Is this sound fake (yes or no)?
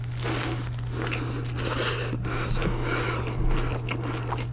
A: no